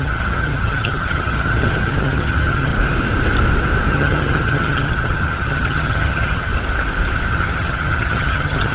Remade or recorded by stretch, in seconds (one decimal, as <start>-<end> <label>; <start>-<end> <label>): 0.0-2.7 remade; 2.7-3.9 recorded; 3.9-6.5 remade; 6.5-7.3 recorded; 7.3-8.7 remade